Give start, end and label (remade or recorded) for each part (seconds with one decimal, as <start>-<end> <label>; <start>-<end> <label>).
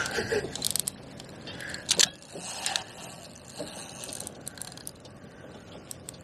0.0-6.2 recorded